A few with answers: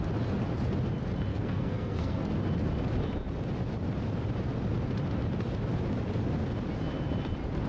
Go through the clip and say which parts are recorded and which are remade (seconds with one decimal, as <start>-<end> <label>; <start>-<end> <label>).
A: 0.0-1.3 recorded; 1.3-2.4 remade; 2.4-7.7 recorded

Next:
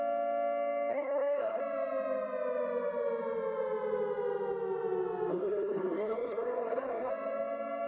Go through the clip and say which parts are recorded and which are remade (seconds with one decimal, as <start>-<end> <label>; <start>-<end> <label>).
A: 0.0-0.9 recorded; 0.9-1.6 remade; 1.6-5.3 recorded; 5.3-7.1 remade; 7.1-7.9 recorded

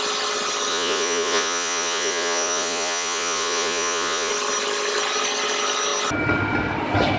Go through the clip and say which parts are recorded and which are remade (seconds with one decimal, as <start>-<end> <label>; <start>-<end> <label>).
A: 0.0-0.7 recorded; 0.7-4.3 remade; 4.3-7.2 recorded

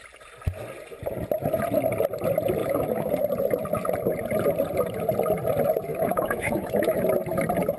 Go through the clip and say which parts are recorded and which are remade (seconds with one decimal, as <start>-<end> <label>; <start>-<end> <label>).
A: 0.0-2.6 recorded; 2.6-3.1 remade; 3.1-5.9 recorded; 5.9-7.0 remade; 7.0-7.8 recorded

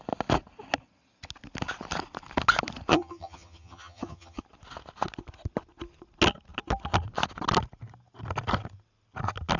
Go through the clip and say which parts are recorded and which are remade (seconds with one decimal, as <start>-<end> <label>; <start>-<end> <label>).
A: 0.0-2.9 recorded; 2.9-4.4 remade; 4.4-9.6 recorded

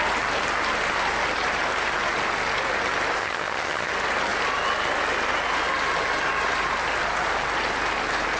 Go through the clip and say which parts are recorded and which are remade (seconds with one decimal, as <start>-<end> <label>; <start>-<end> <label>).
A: 0.0-3.2 recorded; 3.2-3.9 remade; 3.9-8.4 recorded

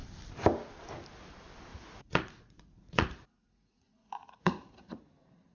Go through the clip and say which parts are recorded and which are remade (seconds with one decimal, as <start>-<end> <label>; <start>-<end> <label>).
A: 0.0-1.7 recorded; 1.7-5.0 remade; 5.0-5.5 recorded

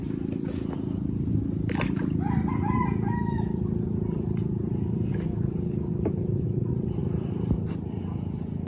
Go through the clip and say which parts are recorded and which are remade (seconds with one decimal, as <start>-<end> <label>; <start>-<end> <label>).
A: 0.0-8.7 recorded